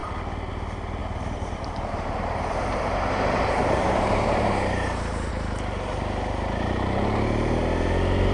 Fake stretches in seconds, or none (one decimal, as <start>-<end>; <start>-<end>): 1.0-5.3